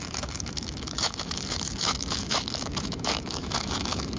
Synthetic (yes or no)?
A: yes